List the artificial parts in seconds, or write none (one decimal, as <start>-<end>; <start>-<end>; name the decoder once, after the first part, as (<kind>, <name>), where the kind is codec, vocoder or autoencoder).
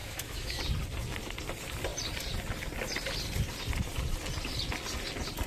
0.0-0.6 (autoencoder, DAC-VAE)